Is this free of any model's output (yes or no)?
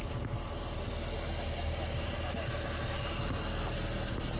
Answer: yes